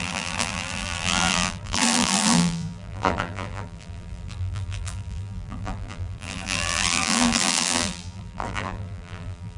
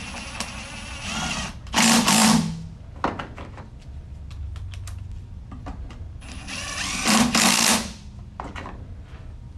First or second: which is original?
second